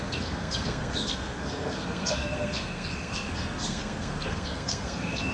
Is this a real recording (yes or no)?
no